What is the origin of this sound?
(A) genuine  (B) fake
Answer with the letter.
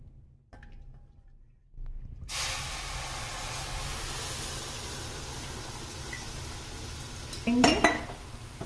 A